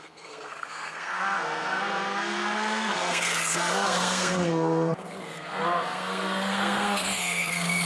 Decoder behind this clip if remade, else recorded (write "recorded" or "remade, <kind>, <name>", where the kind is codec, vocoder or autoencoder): remade, codec, SNAC